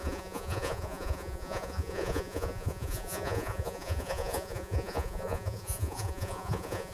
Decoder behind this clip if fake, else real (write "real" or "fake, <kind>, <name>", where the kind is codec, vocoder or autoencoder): fake, vocoder, Vocos